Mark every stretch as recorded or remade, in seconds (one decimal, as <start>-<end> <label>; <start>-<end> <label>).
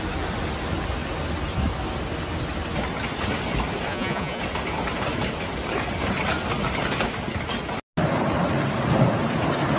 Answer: 0.0-3.9 recorded; 3.9-4.4 remade; 4.4-9.8 recorded